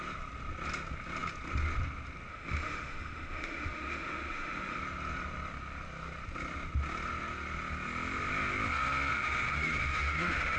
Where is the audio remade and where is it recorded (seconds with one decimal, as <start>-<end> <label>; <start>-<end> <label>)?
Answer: 0.0-2.3 recorded; 2.3-4.8 remade; 4.8-9.1 recorded; 9.1-10.6 remade